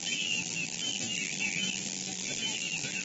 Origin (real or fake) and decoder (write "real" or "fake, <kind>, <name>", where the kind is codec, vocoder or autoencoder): fake, vocoder, BigVGAN v2